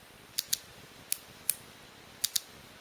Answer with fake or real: real